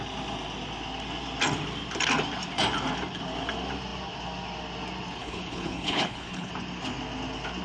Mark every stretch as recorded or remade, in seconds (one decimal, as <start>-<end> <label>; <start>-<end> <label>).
0.0-5.2 recorded; 5.2-6.5 remade; 6.5-7.6 recorded

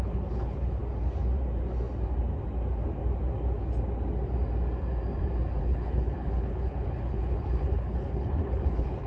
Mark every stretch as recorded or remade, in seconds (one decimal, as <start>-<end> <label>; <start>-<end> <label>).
0.0-0.8 remade; 0.8-5.6 recorded; 5.6-9.1 remade

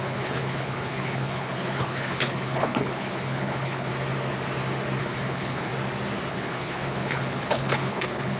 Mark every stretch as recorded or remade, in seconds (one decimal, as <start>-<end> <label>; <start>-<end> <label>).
0.0-3.9 remade; 3.9-5.0 recorded; 5.0-5.7 remade; 5.7-6.3 recorded; 6.3-8.4 remade

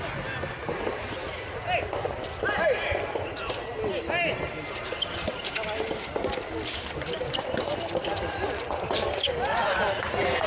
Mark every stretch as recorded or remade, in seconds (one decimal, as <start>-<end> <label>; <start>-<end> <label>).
0.0-10.5 recorded

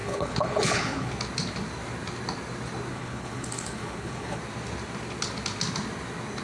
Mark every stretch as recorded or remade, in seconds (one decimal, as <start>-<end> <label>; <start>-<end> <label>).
0.0-1.1 remade; 1.1-2.9 recorded; 2.9-4.4 remade; 4.4-6.4 recorded

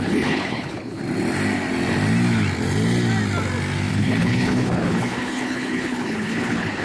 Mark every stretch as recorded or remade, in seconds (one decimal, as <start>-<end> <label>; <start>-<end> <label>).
0.0-1.0 remade; 1.0-3.9 recorded; 3.9-6.8 remade

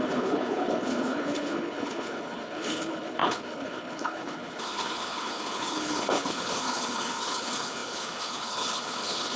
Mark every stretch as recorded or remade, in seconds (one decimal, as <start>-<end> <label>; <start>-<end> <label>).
0.0-9.4 remade

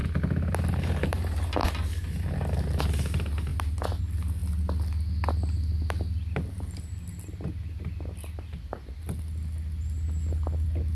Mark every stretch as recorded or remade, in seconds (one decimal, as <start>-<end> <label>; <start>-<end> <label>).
0.0-10.9 recorded